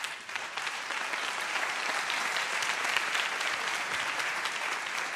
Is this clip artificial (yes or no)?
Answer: yes